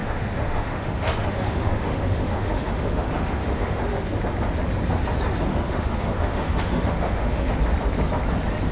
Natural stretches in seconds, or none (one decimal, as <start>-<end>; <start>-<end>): 3.8-5.5; 7.5-8.7